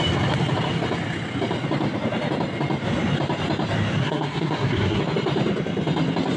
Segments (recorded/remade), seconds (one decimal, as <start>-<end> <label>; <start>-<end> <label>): 0.0-4.0 recorded; 4.0-5.0 remade; 5.0-6.4 recorded